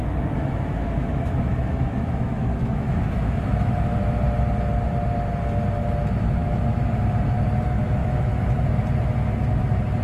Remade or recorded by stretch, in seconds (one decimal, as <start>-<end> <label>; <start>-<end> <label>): 0.0-4.2 remade; 4.2-6.4 recorded; 6.4-7.0 remade; 7.0-8.0 recorded; 8.0-8.6 remade; 8.6-10.0 recorded